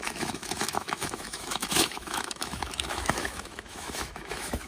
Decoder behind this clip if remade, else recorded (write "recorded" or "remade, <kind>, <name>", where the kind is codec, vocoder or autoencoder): remade, autoencoder, DAC-VAE